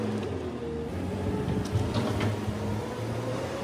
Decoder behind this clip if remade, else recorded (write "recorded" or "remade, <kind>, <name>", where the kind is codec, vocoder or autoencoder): recorded